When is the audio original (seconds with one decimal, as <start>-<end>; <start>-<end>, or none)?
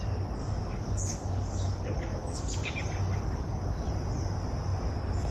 0.0-0.4; 3.6-5.3